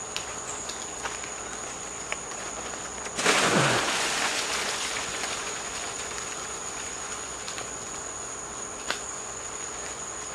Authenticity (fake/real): fake